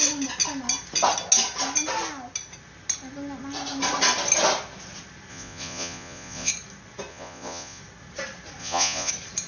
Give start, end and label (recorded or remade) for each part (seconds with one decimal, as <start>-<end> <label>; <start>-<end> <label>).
0.0-5.3 recorded; 5.3-6.5 remade; 6.5-7.1 recorded; 7.1-7.8 remade; 7.8-8.6 recorded; 8.6-9.1 remade; 9.1-9.5 recorded